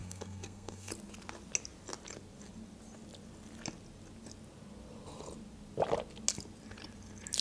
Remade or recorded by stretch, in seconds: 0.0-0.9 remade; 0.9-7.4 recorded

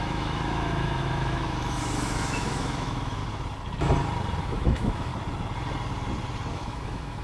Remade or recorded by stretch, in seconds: 0.0-3.2 remade; 3.2-4.4 recorded; 4.4-5.1 remade; 5.1-6.5 recorded; 6.5-7.2 remade

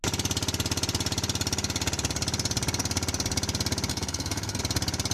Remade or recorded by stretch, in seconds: 0.0-3.9 recorded; 3.9-4.6 remade; 4.6-5.1 recorded

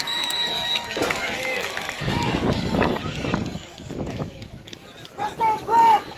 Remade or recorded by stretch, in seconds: 0.0-4.8 remade; 4.8-5.4 recorded; 5.4-6.2 remade

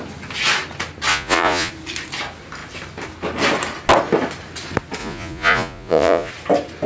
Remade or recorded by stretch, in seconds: 0.0-1.1 recorded; 1.1-1.7 remade; 1.7-5.0 recorded; 5.0-6.3 remade; 6.3-6.9 recorded

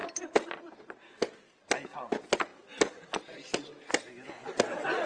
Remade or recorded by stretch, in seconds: 0.0-5.1 recorded